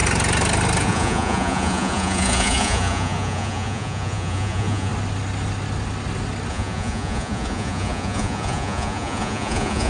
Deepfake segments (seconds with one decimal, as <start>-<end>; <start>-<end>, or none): 0.8-4.9; 6.5-9.9